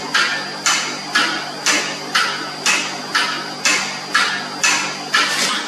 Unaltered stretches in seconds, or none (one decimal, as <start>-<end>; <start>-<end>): 0.0-5.7